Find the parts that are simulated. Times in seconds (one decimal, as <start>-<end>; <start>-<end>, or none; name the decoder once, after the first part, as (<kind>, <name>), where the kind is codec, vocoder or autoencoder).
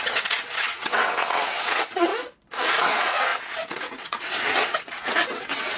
0.0-2.1 (vocoder, WaveNeXt); 2.8-5.8